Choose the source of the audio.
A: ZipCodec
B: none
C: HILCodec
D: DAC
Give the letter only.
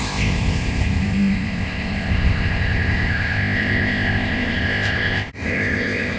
A